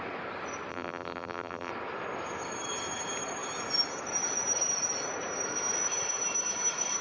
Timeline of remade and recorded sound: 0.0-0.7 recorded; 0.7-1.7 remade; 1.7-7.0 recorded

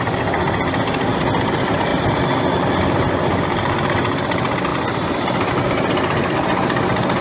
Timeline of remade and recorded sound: 0.0-4.7 recorded; 4.7-5.5 remade; 5.5-7.2 recorded

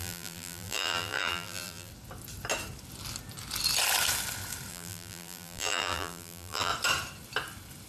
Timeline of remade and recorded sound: 0.0-1.9 remade; 1.9-4.7 recorded; 4.7-6.7 remade; 6.7-7.9 recorded

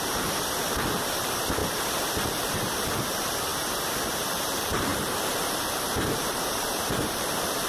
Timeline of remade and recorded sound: 0.0-1.6 remade; 1.6-2.1 recorded; 2.1-3.5 remade; 3.5-4.0 recorded; 4.0-7.7 remade

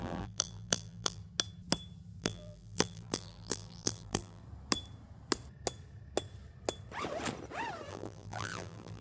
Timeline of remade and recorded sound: 0.0-1.2 remade; 1.2-2.2 recorded; 2.2-4.4 remade; 4.4-7.9 recorded; 7.9-9.0 remade

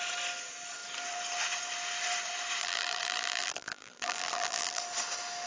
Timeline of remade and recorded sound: 0.0-2.6 recorded; 2.6-4.8 remade; 4.8-5.5 recorded